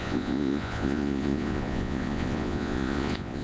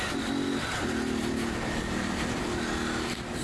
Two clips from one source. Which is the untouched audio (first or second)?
second